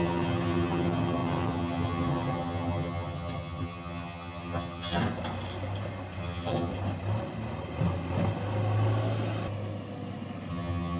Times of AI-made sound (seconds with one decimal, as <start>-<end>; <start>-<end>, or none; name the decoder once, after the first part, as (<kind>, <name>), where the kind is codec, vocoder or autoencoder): 0.0-5.0 (vocoder, HiFi-GAN); 6.2-6.7; 10.5-11.0